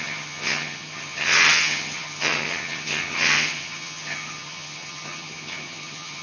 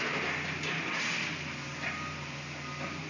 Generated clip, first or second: first